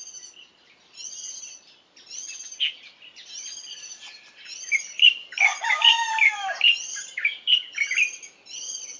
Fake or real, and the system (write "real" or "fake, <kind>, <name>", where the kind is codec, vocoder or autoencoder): real